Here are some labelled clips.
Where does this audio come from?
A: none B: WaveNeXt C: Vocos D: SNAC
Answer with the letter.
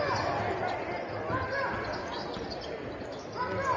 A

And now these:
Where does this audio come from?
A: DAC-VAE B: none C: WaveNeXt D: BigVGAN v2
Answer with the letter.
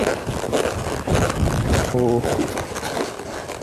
B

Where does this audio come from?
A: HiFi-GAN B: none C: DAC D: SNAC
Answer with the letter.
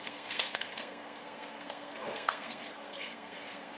D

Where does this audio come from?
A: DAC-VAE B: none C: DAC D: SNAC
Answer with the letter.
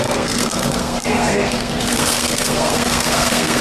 D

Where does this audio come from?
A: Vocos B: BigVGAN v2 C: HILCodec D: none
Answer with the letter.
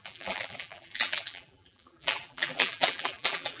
B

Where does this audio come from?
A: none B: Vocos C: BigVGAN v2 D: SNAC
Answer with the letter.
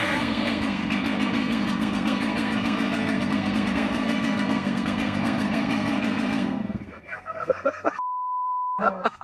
D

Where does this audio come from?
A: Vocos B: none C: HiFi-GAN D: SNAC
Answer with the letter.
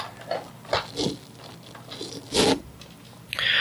B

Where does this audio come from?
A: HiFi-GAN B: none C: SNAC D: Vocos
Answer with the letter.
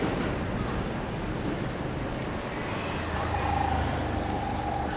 B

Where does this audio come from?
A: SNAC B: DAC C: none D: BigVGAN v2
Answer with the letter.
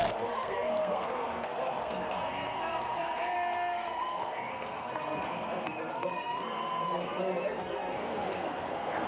A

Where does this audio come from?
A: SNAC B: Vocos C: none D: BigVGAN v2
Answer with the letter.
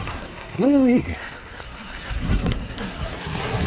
A